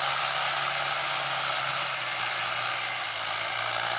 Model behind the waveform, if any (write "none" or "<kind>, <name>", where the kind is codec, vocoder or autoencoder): none